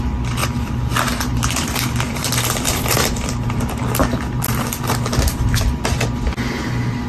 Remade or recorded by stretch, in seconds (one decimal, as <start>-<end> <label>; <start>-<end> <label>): 0.0-0.4 recorded; 0.4-3.6 remade; 3.6-7.1 recorded